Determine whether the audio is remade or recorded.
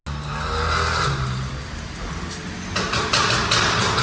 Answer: recorded